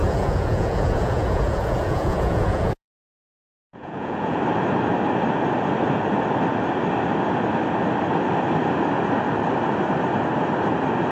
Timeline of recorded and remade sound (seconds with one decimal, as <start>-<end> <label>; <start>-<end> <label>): 0.0-4.4 remade; 4.4-11.1 recorded